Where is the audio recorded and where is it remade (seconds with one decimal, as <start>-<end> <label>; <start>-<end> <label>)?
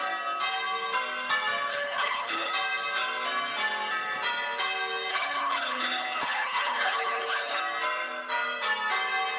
0.0-1.7 recorded; 1.7-2.5 remade; 2.5-5.1 recorded; 5.1-7.6 remade; 7.6-9.4 recorded